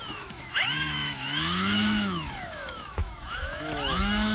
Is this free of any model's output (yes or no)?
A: no